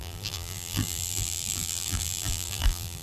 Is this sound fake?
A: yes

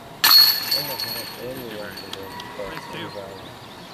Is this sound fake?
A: no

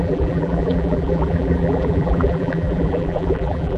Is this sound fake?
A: yes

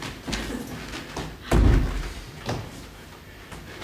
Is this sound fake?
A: no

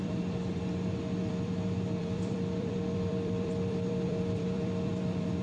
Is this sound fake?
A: yes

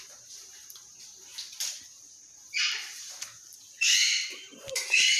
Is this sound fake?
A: yes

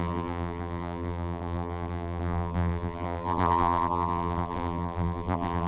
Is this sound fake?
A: yes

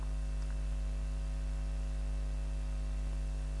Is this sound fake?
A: no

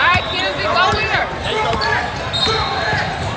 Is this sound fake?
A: yes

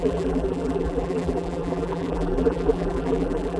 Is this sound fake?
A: yes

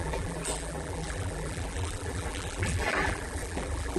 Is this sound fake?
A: yes